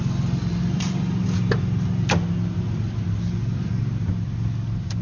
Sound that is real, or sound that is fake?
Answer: real